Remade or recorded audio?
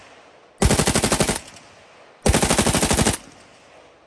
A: recorded